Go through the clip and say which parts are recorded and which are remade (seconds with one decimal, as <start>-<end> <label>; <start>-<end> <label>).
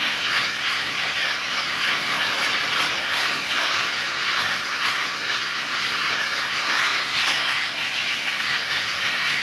0.0-2.4 remade; 2.4-2.9 recorded; 2.9-9.4 remade